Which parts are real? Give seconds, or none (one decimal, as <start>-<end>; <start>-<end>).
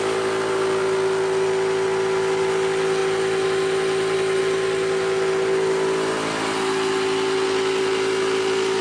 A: 0.0-8.8